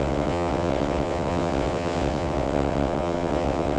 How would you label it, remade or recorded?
remade